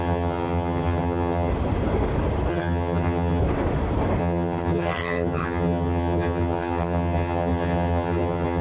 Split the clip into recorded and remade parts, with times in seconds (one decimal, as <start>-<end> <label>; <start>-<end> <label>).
0.0-1.5 remade; 1.5-2.5 recorded; 2.5-3.4 remade; 3.4-4.2 recorded; 4.2-8.6 remade